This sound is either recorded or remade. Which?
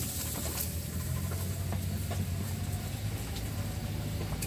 recorded